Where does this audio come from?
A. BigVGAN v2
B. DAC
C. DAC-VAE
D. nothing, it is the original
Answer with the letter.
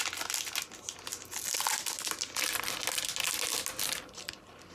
D